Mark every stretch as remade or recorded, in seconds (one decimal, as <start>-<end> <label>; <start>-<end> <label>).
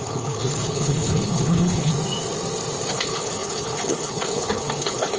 0.0-1.9 remade; 1.9-2.9 recorded; 2.9-5.2 remade